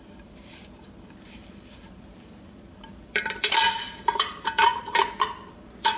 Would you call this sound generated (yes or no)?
yes